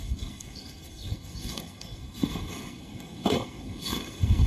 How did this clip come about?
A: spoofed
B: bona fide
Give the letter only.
A